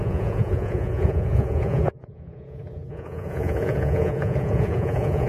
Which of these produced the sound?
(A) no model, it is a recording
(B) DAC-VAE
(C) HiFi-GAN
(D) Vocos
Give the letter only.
D